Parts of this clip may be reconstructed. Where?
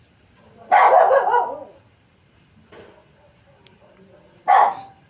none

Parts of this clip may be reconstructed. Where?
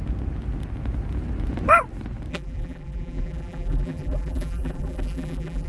2.3-5.7 (vocoder, BigVGAN v2)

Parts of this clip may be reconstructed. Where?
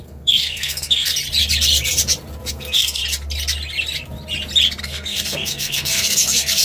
0.0-1.1 (codec, SNAC); 2.5-3.0; 4.8-6.6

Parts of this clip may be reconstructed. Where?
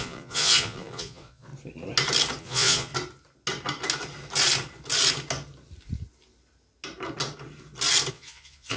0.0-1.5 (vocoder, Vocos); 2.4-2.9; 8.1-8.8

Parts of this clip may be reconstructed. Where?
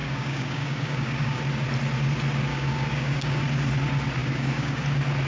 0.0-1.4 (codec, DAC); 2.5-3.4; 4.2-4.8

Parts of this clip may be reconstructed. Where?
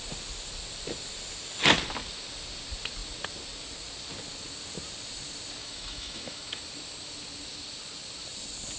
5.6-6.6 (autoencoder, DAC-VAE)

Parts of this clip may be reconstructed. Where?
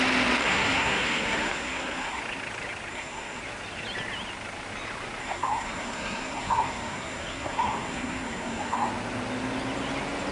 0.4-2.2 (codec, SNAC); 2.9-3.4; 5.2-8.9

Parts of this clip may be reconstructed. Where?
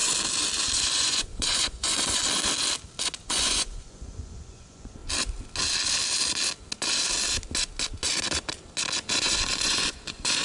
0.7-2.2 (vocoder, Vocos); 3.2-5.0; 9.1-10.4